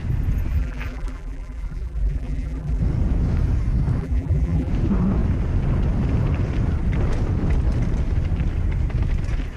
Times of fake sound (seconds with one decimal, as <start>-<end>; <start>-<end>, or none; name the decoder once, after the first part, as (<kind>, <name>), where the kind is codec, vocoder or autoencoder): 0.5-2.8 (vocoder, BigVGAN v2); 4.0-4.7